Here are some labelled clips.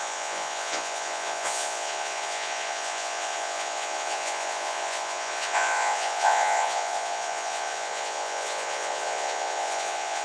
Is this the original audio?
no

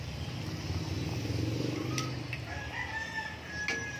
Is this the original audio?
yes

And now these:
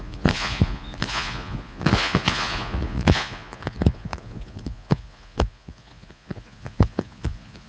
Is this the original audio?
no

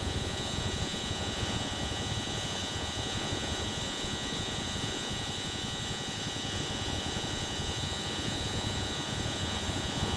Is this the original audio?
no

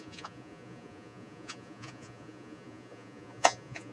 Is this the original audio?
no